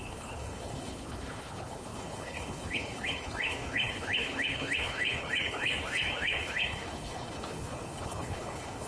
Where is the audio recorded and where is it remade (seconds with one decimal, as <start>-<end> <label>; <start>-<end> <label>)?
0.0-8.9 remade